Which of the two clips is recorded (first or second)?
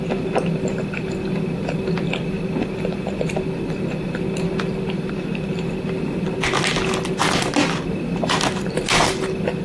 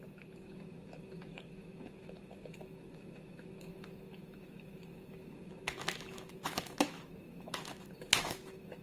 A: first